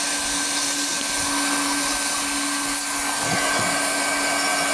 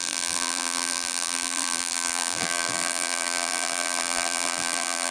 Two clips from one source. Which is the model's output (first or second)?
second